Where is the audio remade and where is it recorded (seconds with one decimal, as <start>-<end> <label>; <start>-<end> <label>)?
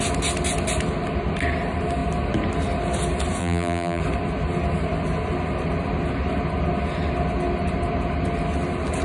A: 0.0-3.4 recorded; 3.4-4.0 remade; 4.0-9.0 recorded